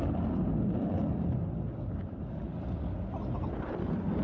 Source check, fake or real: real